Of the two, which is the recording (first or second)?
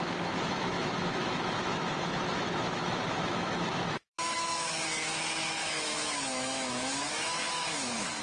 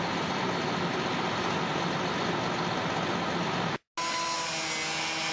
second